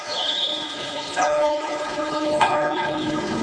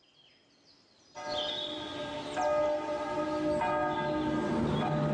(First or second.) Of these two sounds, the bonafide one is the second